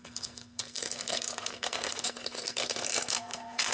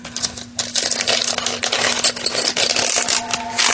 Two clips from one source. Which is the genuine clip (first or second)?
second